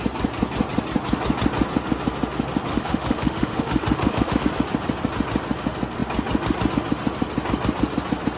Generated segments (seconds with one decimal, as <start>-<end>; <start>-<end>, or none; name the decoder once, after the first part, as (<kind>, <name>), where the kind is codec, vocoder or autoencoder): 2.7-4.4 (autoencoder, DAC-VAE)